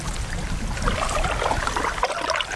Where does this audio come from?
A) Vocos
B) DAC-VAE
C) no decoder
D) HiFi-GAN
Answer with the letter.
C